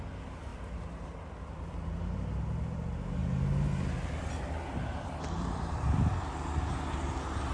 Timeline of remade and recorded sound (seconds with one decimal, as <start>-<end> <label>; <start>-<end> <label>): 0.0-7.5 recorded